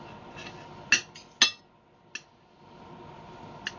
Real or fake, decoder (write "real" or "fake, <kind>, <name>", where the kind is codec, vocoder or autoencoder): real